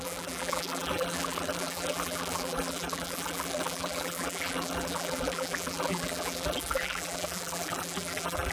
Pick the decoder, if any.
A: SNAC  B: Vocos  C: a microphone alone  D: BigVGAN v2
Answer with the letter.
D